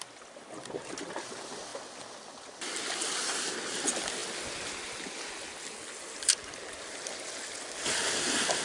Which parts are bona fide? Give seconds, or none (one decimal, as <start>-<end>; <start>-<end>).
0.0-8.6